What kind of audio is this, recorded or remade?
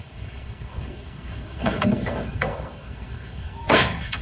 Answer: remade